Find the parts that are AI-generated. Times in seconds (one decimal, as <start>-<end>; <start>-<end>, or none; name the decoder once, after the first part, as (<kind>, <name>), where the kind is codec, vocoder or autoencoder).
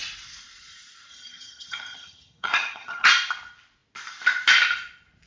1.1-3.1 (vocoder, HiFi-GAN)